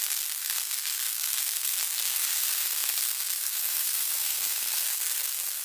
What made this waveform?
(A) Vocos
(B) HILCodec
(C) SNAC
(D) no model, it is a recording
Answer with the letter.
C